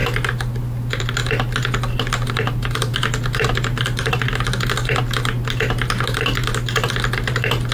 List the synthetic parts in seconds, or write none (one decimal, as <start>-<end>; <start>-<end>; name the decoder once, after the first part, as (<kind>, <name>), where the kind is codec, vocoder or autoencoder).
none